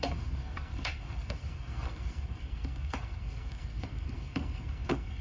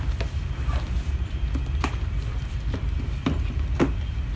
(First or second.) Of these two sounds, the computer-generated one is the first